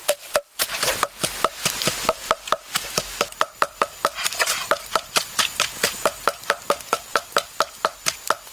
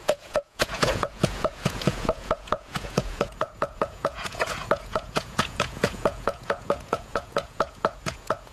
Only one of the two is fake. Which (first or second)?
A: second